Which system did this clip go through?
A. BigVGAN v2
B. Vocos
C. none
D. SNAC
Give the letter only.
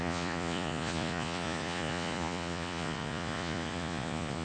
B